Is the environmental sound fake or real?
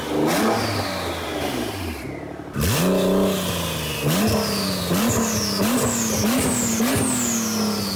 real